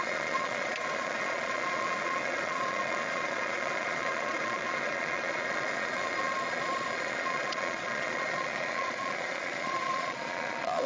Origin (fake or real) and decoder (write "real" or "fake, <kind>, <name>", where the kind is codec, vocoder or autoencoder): fake, vocoder, Vocos